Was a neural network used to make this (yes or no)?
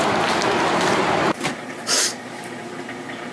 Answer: yes